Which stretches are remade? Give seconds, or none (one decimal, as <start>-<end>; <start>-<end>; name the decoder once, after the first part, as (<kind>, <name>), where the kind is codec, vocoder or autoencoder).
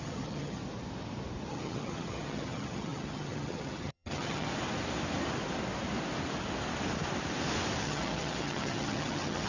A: 0.0-0.6 (vocoder, HiFi-GAN); 1.5-4.5; 7.8-9.5